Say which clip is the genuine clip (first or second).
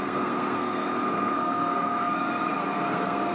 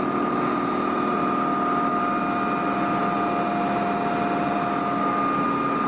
second